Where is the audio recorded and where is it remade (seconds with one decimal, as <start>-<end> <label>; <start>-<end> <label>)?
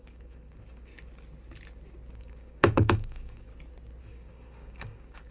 0.0-0.9 remade; 0.9-2.2 recorded; 2.2-3.5 remade; 3.5-4.0 recorded; 4.0-5.3 remade